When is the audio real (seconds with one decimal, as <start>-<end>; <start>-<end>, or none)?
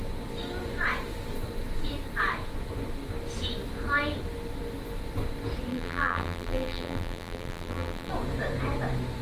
0.0-5.7; 8.1-9.2